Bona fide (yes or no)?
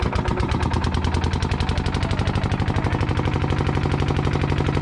yes